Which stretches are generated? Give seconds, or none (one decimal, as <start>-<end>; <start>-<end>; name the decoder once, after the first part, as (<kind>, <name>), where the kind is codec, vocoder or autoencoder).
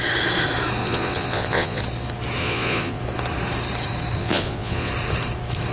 0.8-1.8 (vocoder, Vocos); 2.4-3.0; 4.2-4.9